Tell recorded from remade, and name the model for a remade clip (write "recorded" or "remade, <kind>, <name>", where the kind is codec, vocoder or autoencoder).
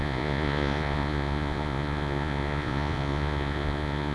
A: remade, vocoder, Vocos